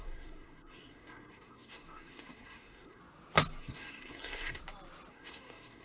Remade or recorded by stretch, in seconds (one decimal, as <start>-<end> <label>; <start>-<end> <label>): 0.0-3.0 remade; 3.0-3.6 recorded; 3.6-4.6 remade; 4.6-5.1 recorded; 5.1-5.8 remade